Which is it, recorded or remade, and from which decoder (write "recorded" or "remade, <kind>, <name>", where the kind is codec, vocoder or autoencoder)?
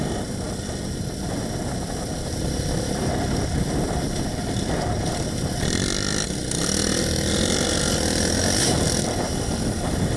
recorded